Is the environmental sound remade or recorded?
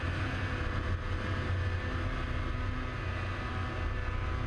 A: recorded